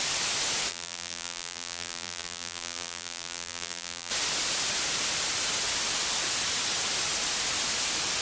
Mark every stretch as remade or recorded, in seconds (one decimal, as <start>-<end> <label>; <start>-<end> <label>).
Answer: 0.0-0.7 recorded; 0.7-4.1 remade; 4.1-8.2 recorded